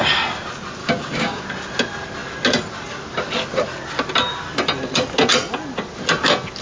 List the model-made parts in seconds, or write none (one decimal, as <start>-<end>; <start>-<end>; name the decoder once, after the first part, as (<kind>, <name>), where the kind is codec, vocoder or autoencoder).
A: 0.8-1.4 (codec, DAC)

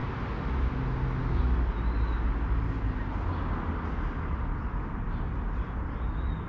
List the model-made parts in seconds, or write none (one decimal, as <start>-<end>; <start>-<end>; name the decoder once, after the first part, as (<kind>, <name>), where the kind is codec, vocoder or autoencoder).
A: none

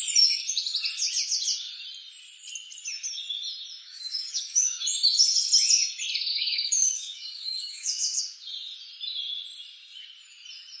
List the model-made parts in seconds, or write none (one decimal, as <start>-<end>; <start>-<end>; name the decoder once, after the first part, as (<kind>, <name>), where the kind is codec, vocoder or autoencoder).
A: 3.8-4.8 (codec, DAC); 6.3-8.2

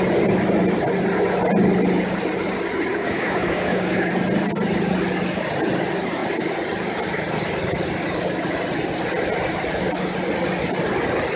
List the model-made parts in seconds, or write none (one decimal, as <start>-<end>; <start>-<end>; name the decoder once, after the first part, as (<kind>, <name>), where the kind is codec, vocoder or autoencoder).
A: 2.9-4.1 (codec, DAC)